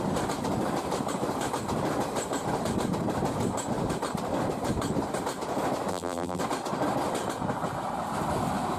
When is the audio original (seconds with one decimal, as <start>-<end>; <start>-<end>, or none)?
0.0-5.9; 6.4-8.8